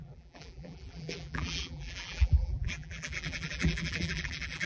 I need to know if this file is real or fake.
fake